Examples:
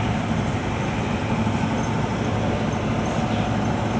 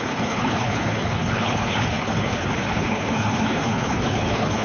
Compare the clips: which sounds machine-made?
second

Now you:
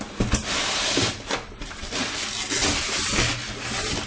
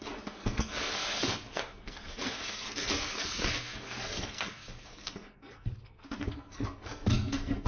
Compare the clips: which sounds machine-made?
second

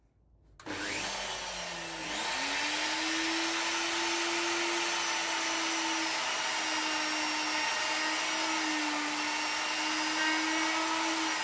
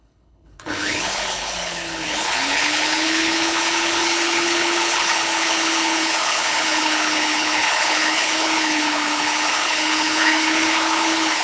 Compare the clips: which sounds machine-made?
second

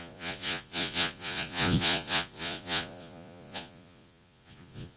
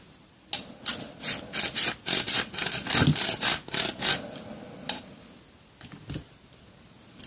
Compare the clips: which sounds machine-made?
first